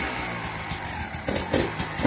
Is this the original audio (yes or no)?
yes